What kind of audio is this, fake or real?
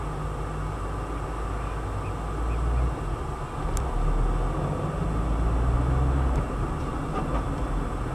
real